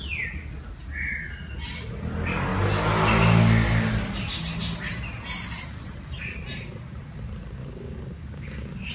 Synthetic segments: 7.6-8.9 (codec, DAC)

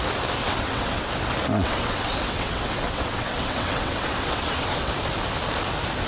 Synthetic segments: 0.4-1.1 (vocoder, WaveNeXt); 1.5-4.9

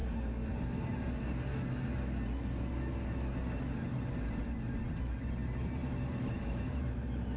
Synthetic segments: 5.4-7.0 (vocoder, BigVGAN v2)

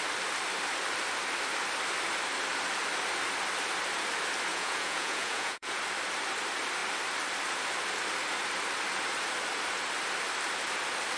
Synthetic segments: 4.5-5.8 (vocoder, Vocos)

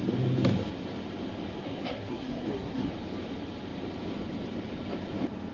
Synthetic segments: 1.6-2.9 (codec, SNAC)